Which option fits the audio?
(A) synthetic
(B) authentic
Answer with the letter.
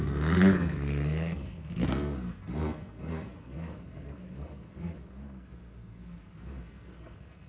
A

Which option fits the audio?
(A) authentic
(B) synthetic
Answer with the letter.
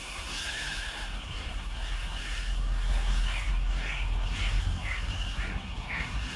B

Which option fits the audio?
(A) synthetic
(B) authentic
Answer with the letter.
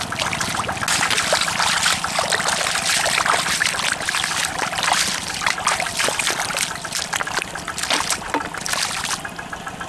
B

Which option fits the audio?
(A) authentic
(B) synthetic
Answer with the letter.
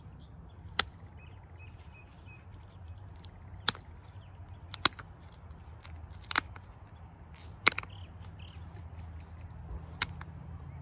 A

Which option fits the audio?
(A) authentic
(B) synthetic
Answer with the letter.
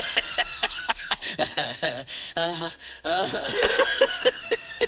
B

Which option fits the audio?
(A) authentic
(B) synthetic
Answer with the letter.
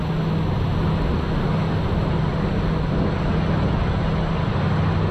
A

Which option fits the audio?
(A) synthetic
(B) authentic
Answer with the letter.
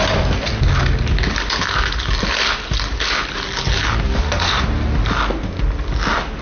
B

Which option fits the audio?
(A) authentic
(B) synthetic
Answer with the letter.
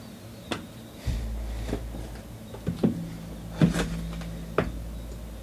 A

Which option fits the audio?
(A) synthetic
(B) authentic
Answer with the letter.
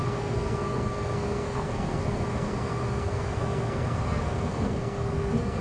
A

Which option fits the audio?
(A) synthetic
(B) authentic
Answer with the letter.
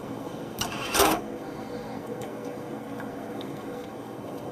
A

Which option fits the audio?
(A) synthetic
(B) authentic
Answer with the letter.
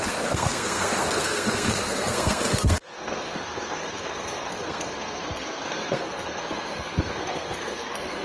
A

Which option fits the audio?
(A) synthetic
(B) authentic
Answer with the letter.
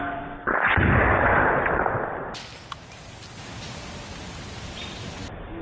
B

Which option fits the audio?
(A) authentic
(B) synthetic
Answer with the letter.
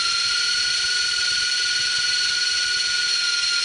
A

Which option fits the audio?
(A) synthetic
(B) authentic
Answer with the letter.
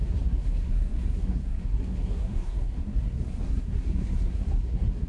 A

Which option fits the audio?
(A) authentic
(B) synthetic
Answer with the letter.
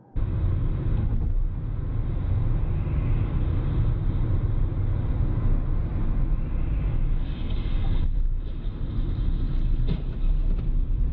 A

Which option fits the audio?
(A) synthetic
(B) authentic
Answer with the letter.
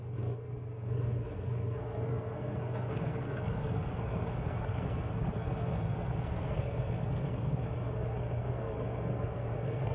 A